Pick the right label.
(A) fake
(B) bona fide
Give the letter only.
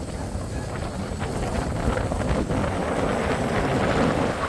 B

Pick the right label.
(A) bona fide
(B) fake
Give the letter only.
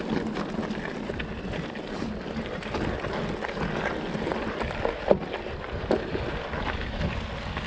A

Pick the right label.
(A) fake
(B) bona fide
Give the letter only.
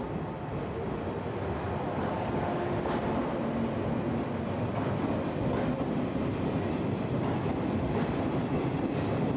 B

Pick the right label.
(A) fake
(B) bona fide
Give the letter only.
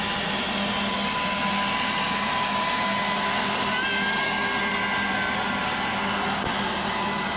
B